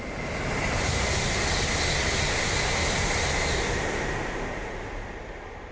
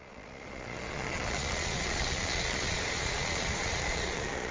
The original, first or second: first